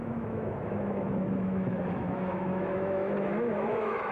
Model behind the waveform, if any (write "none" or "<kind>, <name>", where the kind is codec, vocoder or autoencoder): autoencoder, DAC-VAE